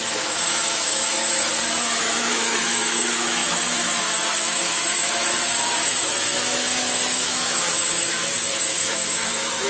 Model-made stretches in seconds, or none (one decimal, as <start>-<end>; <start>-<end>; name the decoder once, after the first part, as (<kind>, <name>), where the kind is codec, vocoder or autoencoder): 0.0-1.5 (autoencoder, DAC-VAE); 2.0-9.7